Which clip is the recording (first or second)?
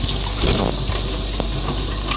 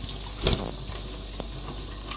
second